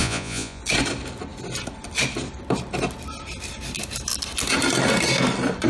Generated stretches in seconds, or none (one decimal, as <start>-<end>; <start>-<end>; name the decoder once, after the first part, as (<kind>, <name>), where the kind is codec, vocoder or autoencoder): 0.0-0.6 (vocoder, Vocos)